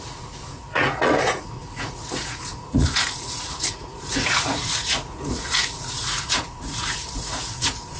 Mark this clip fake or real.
fake